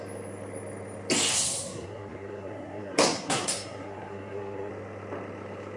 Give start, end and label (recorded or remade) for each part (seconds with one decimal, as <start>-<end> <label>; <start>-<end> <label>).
0.0-1.3 recorded; 1.3-4.7 remade; 4.7-5.8 recorded